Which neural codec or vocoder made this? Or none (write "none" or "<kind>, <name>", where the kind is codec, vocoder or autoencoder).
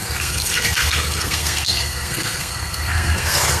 codec, SNAC